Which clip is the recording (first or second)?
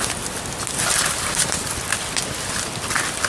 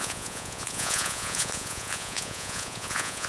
first